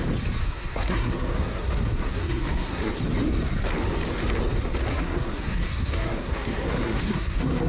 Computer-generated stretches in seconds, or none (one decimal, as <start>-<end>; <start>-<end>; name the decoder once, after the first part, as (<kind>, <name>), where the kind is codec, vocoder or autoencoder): 0.4-2.9 (codec, SNAC); 4.9-7.7